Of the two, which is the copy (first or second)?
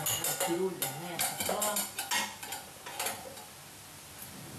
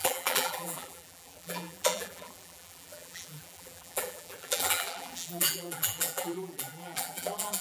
second